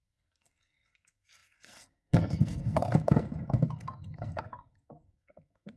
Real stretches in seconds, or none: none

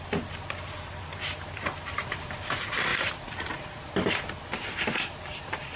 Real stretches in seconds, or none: 0.0-1.9; 2.5-2.9; 4.1-5.8

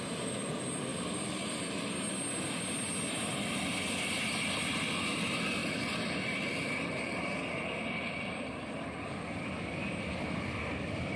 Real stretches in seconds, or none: 0.0-5.6

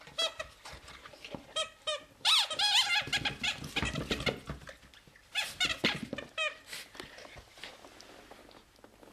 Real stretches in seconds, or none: 0.0-1.1; 2.3-9.1

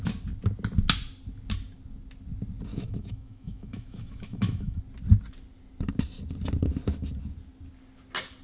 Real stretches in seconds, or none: 0.0-2.7; 4.8-8.4

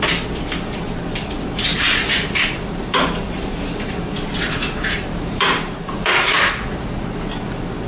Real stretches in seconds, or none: 0.0-1.9; 6.5-7.9

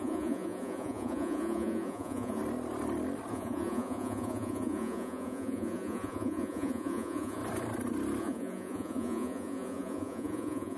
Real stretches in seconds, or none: 2.4-3.3; 7.4-8.2